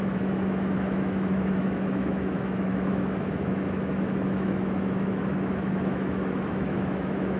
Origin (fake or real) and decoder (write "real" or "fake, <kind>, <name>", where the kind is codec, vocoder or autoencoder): fake, autoencoder, DAC-VAE